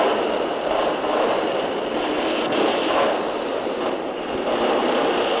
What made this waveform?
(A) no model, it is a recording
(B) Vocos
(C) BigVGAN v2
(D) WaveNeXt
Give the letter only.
C